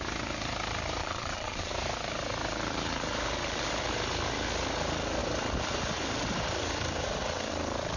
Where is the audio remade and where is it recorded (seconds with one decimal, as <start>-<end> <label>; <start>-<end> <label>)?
0.0-1.0 recorded; 1.0-1.7 remade; 1.7-8.0 recorded